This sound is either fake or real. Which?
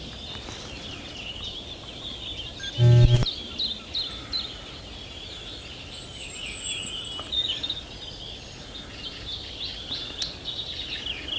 real